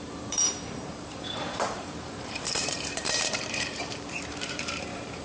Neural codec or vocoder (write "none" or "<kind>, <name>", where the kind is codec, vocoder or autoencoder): vocoder, BigVGAN v2